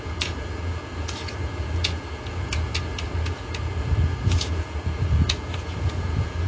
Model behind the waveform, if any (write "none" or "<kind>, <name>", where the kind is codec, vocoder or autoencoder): vocoder, Vocos